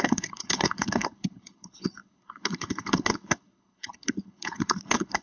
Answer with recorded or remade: remade